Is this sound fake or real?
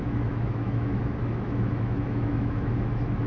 fake